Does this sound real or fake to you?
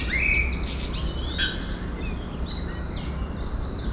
real